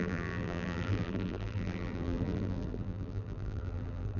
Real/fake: fake